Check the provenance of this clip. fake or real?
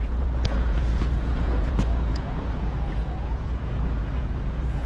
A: fake